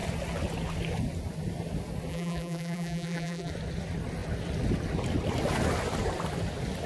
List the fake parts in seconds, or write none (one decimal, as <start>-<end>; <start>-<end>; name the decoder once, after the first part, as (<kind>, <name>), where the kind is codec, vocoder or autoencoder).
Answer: 2.1-3.5 (vocoder, BigVGAN v2)